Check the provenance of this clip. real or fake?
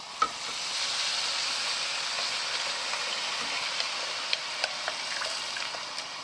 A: real